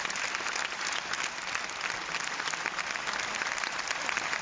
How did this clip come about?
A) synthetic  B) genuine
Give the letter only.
B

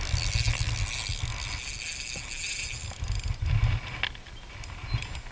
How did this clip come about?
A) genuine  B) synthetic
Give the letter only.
A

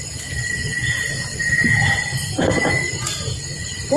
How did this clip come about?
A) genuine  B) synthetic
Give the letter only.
A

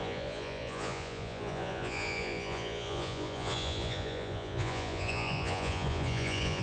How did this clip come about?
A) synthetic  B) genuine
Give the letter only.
A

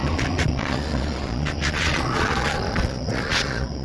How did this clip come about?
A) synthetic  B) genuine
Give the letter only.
A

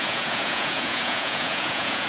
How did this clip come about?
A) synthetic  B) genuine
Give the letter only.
A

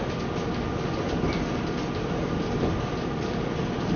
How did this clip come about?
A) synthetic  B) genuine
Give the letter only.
B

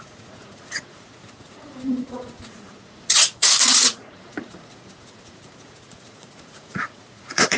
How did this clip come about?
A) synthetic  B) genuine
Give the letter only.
A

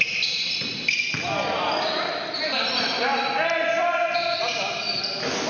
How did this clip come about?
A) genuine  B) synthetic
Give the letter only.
A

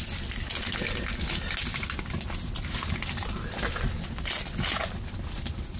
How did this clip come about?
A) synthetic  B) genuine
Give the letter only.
B